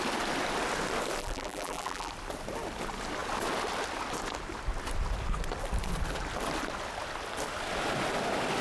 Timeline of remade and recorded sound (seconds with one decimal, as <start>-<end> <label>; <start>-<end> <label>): 0.0-1.2 recorded; 1.2-2.1 remade; 2.1-8.6 recorded